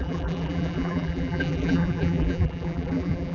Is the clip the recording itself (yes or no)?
no